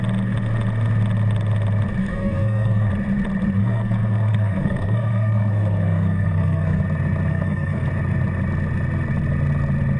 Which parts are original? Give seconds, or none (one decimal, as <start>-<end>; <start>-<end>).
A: 0.0-2.0; 2.9-3.6; 6.8-7.3; 7.9-10.0